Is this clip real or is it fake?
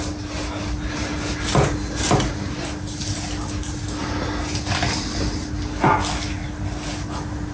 real